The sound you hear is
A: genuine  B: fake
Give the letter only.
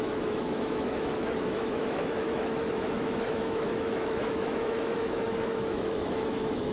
B